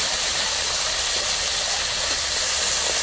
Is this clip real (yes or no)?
yes